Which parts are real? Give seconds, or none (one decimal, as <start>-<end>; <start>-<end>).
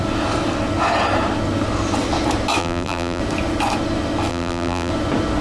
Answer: 0.0-2.6; 3.2-4.3; 4.9-5.4